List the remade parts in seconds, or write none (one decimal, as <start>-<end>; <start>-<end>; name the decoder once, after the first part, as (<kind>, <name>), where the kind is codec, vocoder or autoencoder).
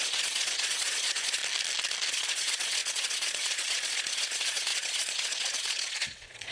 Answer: 0.0-1.4 (vocoder, Vocos); 2.1-6.5